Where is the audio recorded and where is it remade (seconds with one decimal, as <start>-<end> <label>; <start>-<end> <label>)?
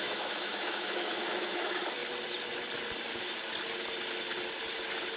0.0-2.0 remade; 2.0-5.2 recorded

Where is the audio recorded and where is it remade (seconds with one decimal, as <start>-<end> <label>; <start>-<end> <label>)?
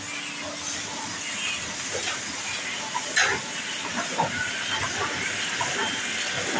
0.0-6.6 recorded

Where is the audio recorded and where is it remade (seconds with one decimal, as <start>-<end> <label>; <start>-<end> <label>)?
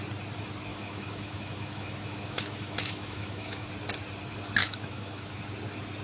0.0-0.7 recorded; 0.7-3.7 remade; 3.7-4.6 recorded; 4.6-5.4 remade; 5.4-6.0 recorded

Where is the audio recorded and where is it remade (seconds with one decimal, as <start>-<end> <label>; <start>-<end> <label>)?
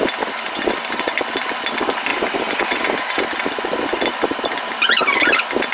0.0-5.7 recorded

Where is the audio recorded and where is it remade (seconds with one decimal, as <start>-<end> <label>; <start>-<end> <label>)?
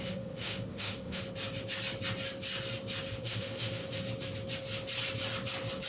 0.0-1.2 remade; 1.2-3.2 recorded; 3.2-3.8 remade; 3.8-5.9 recorded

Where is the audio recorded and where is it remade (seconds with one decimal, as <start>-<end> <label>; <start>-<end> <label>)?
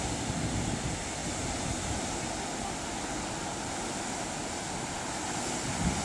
0.0-6.0 recorded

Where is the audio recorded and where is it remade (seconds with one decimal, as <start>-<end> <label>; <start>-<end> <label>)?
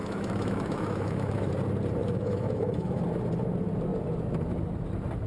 0.0-1.5 remade; 1.5-2.0 recorded; 2.0-3.0 remade; 3.0-5.3 recorded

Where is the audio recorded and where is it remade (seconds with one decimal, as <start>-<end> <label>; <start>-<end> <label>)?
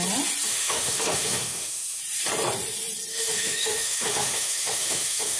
0.0-0.5 recorded; 0.5-2.0 remade; 2.0-3.1 recorded; 3.1-5.4 remade